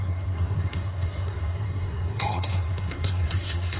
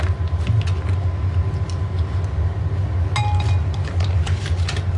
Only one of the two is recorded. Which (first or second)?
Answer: second